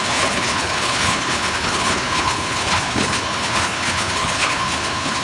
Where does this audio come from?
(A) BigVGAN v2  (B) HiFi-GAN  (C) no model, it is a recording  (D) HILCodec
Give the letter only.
D